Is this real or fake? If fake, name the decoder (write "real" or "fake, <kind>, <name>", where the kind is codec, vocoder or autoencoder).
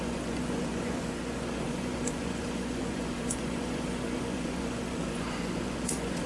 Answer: fake, vocoder, Vocos